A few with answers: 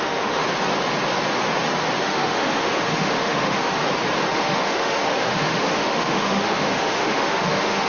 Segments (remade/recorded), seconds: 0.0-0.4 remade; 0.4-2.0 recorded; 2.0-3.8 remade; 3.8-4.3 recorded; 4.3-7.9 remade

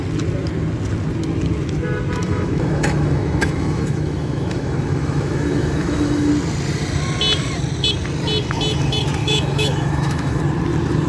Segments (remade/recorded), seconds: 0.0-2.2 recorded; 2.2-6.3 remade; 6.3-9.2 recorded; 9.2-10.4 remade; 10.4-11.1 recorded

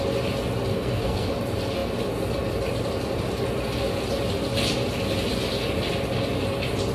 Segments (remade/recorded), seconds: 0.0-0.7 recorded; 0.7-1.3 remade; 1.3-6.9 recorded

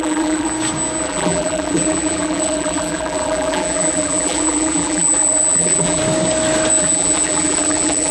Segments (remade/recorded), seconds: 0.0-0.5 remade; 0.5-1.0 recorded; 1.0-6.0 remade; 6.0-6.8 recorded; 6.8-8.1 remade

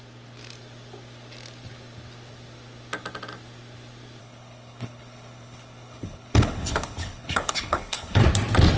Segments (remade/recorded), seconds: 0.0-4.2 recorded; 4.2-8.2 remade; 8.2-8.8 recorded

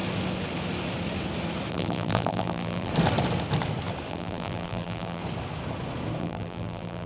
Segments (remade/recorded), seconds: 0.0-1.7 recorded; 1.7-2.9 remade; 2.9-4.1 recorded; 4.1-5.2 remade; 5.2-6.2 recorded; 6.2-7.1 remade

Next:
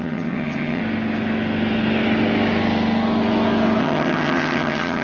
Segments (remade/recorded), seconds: 0.0-0.8 remade; 0.8-3.8 recorded; 3.8-5.0 remade